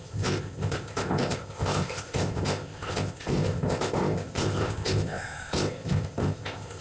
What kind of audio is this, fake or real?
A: fake